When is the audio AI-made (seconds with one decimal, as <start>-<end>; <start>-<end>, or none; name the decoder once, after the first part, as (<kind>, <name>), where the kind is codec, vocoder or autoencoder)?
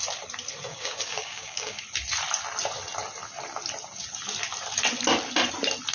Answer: 0.7-1.8 (codec, DAC)